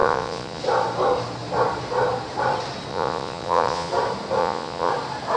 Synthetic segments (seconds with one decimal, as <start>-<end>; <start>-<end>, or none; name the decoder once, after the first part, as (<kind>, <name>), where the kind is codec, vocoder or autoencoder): 0.0-0.6 (vocoder, Vocos); 2.9-3.9; 4.4-4.9